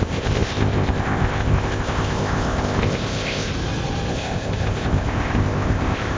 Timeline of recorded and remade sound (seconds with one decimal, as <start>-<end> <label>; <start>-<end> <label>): 0.0-3.5 remade; 3.5-4.1 recorded; 4.1-6.2 remade